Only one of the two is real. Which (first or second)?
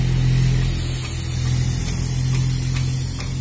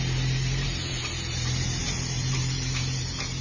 first